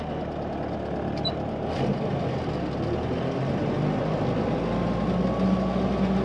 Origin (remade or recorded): recorded